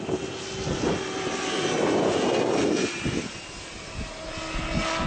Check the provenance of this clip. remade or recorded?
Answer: recorded